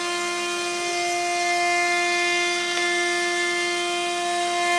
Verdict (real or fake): real